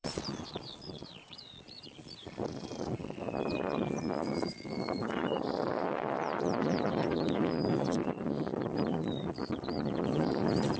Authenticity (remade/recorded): remade